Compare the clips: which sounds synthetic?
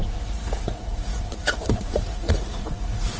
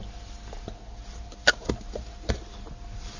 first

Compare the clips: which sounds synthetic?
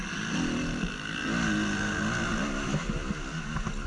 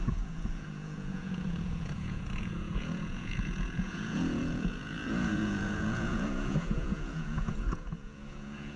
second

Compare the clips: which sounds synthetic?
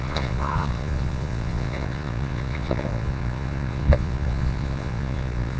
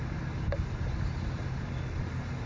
first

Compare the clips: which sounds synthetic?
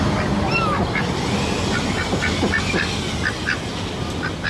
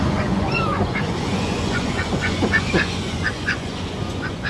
second